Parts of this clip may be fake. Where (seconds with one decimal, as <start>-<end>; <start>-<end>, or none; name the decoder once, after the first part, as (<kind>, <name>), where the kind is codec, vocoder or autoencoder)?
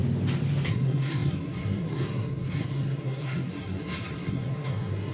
0.7-5.1 (codec, SNAC)